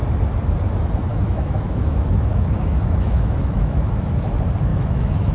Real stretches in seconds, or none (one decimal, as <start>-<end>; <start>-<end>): 0.0-1.1; 4.3-4.7